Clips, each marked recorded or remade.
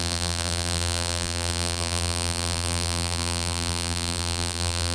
remade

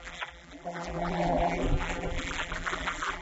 remade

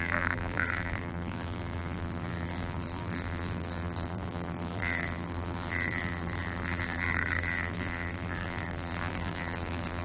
remade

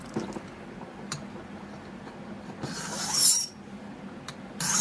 remade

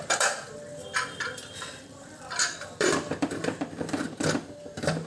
remade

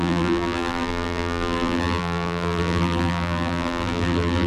remade